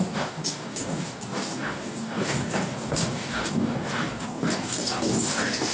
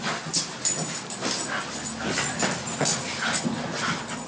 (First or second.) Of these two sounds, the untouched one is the second